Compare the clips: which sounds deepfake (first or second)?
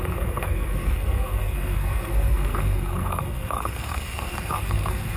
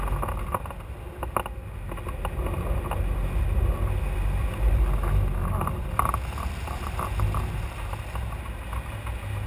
first